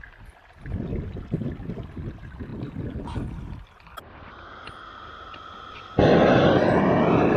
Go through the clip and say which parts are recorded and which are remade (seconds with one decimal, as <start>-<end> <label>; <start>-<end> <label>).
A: 0.0-7.4 recorded